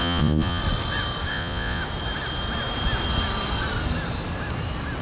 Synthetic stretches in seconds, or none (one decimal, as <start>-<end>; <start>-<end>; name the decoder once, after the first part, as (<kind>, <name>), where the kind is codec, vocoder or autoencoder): 0.0-0.6 (vocoder, Vocos); 1.3-1.8